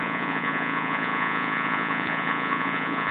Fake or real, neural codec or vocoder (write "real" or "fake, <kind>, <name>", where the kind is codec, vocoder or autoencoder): fake, vocoder, Vocos